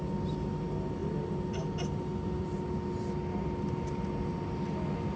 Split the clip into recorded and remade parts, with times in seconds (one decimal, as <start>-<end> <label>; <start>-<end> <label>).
0.0-5.2 recorded